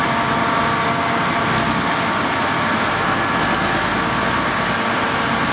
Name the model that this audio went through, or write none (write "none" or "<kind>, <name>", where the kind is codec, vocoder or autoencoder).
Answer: none